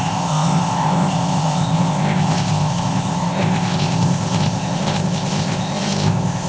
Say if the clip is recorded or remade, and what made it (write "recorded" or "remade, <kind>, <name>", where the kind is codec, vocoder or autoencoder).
remade, codec, ZipCodec